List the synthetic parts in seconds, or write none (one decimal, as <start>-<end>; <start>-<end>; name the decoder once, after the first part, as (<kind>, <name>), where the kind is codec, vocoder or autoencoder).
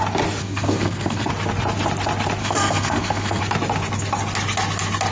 0.4-1.3 (codec, SNAC); 2.4-3.4